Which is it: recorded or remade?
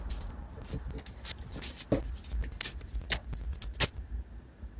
recorded